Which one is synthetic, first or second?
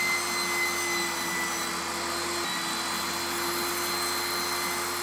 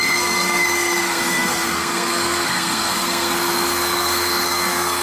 second